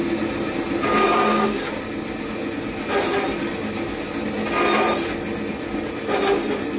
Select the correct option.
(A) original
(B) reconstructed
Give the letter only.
A